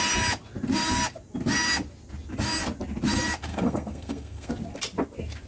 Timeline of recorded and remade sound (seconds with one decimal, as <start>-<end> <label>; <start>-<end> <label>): 0.0-3.5 recorded; 3.5-4.5 remade; 4.5-5.5 recorded